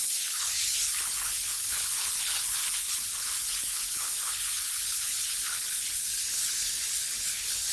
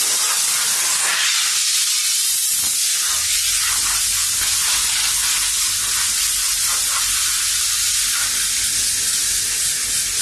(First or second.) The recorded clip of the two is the second